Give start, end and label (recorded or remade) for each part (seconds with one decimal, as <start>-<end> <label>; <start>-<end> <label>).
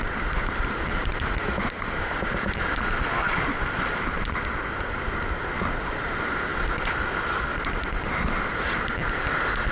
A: 0.0-9.7 recorded